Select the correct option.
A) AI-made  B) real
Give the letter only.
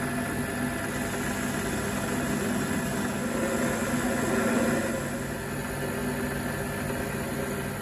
B